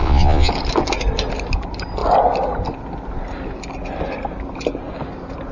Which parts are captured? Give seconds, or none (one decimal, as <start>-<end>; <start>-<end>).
0.5-5.5